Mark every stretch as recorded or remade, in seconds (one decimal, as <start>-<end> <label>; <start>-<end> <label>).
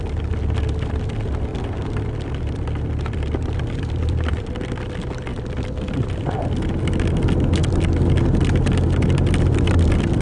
0.0-1.5 recorded; 1.5-4.5 remade; 4.5-10.2 recorded